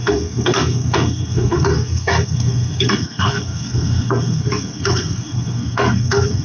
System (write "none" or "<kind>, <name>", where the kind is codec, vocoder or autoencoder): codec, SNAC